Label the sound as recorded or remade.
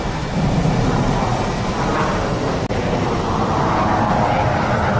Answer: recorded